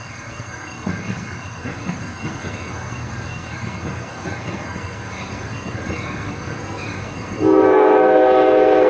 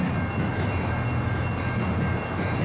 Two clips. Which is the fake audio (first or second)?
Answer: first